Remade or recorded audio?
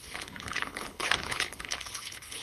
remade